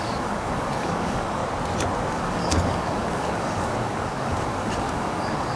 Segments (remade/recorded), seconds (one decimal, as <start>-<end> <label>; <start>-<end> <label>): 0.0-1.4 remade; 1.4-2.1 recorded; 2.1-5.6 remade